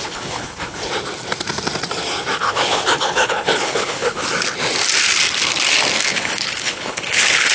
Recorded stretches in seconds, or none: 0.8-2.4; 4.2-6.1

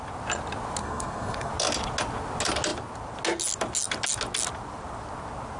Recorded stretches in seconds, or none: 0.0-0.8; 1.5-5.6

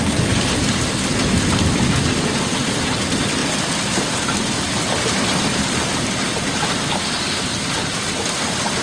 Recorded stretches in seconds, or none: 0.0-7.5